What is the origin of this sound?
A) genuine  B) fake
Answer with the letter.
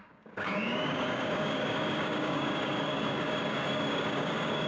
B